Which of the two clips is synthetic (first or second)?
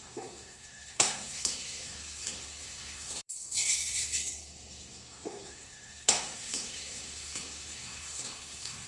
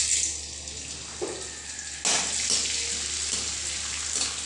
first